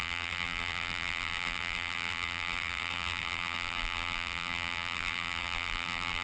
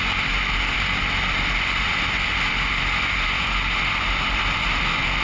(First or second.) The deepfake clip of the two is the first